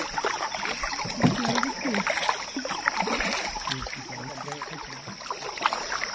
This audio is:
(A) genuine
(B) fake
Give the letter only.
A